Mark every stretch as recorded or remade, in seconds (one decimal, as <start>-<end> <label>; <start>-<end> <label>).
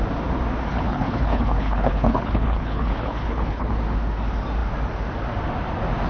0.0-0.7 recorded; 0.7-3.7 remade; 3.7-6.1 recorded